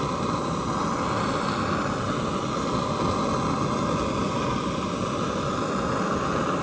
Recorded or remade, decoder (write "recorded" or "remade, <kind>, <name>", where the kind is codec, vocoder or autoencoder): recorded